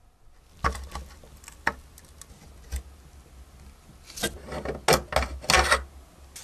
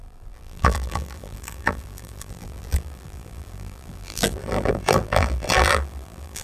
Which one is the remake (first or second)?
second